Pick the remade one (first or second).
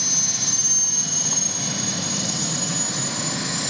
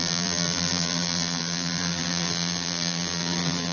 second